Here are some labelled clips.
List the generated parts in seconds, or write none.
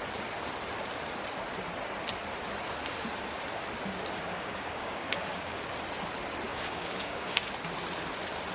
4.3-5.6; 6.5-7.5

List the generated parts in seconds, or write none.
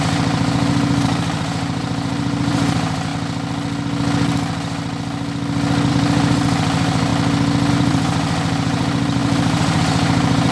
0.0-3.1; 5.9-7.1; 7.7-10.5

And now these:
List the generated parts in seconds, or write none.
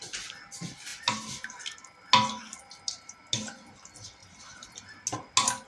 4.2-4.7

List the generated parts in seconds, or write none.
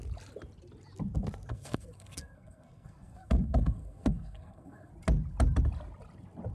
1.5-4.9